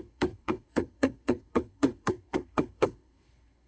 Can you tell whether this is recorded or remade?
remade